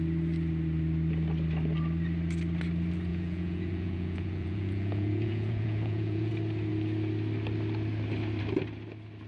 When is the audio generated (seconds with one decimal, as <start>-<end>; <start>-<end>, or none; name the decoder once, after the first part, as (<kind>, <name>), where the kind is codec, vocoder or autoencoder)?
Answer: 3.1-6.3 (vocoder, Vocos)